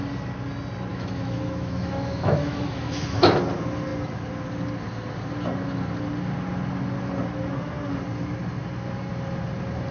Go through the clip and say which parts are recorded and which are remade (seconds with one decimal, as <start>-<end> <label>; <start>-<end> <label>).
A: 0.0-0.9 recorded; 0.9-3.4 remade; 3.4-9.9 recorded